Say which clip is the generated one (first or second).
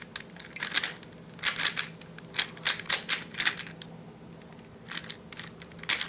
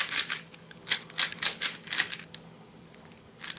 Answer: second